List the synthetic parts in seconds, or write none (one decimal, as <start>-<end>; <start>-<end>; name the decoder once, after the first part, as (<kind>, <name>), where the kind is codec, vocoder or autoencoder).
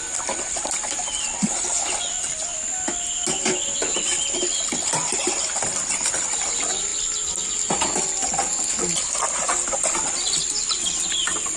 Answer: none